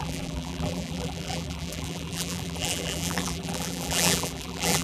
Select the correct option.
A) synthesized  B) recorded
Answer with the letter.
A